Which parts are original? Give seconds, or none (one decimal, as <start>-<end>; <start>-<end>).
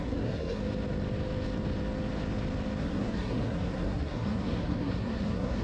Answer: 0.6-2.8